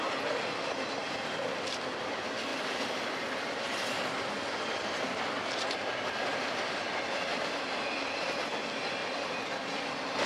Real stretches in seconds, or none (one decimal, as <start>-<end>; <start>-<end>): 0.0-1.0; 1.5-2.5; 3.2-7.3; 8.2-9.0; 9.8-10.3